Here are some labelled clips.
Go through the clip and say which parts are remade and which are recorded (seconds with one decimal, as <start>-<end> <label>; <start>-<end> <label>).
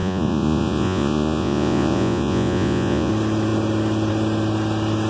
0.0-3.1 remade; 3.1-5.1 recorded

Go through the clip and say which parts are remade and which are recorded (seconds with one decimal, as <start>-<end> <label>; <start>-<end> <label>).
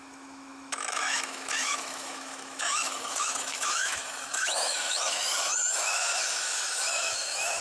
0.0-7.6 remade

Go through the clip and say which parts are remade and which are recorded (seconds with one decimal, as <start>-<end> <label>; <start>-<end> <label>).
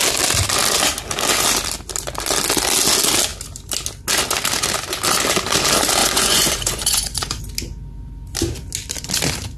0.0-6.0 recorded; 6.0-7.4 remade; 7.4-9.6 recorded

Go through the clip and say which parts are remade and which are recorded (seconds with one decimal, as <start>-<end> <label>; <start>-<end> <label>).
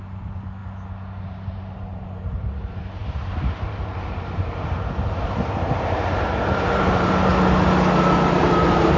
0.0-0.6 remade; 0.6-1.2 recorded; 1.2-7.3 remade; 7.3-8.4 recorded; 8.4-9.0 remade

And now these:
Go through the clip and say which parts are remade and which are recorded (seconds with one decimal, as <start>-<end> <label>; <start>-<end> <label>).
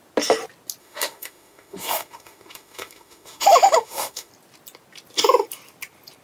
0.0-0.8 recorded; 0.8-4.3 remade; 4.3-6.2 recorded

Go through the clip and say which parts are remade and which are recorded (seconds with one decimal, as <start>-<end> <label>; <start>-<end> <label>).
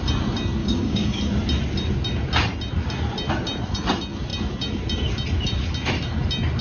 0.0-0.6 recorded; 0.6-1.2 remade; 1.2-6.6 recorded